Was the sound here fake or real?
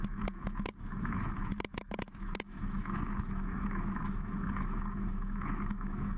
fake